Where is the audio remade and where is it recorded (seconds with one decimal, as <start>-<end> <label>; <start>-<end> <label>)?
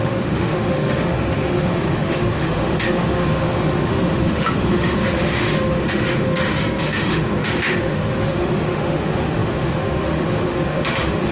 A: 0.0-11.3 remade